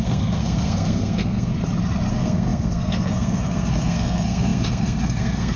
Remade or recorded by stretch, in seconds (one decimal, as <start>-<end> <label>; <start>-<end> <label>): 0.0-1.5 remade; 1.5-2.1 recorded; 2.1-5.6 remade